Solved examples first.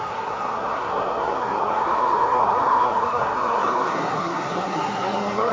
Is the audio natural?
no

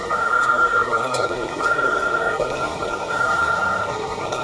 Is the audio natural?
no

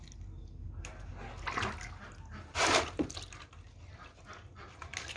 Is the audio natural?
yes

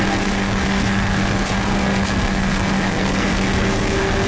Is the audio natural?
no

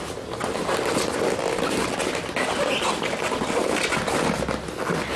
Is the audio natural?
yes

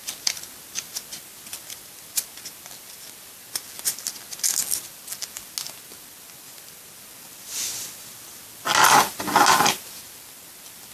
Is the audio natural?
yes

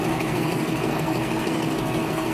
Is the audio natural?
no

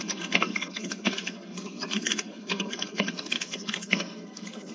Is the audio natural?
no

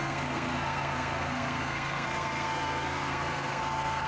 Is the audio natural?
no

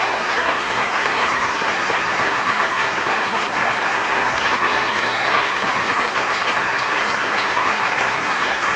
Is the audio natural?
no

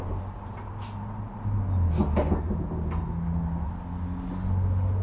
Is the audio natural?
yes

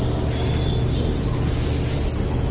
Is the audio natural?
yes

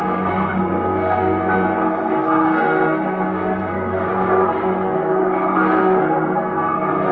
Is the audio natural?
no